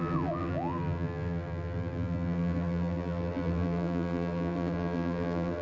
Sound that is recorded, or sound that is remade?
remade